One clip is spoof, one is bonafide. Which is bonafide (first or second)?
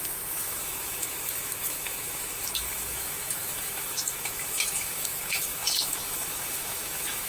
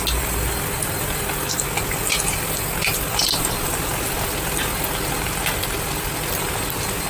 second